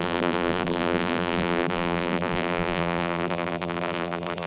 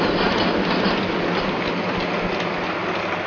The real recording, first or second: second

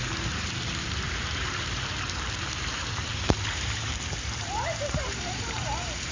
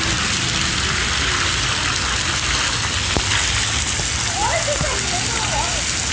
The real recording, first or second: second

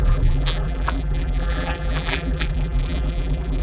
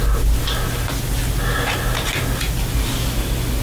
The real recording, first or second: second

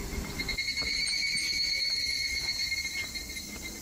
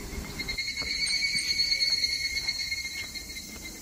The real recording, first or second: first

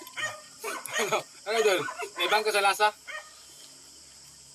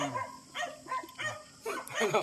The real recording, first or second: second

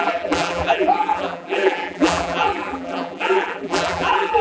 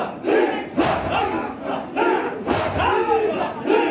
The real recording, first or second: second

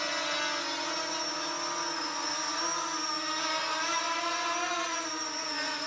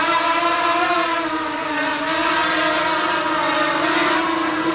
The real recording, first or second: first